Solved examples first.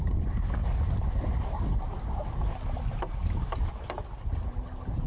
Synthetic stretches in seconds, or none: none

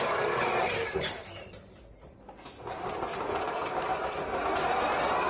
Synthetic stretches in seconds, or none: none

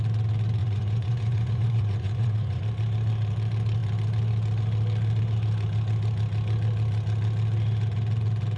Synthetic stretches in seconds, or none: 0.6-2.6 (vocoder, Vocos)